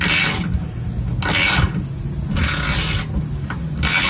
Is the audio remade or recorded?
recorded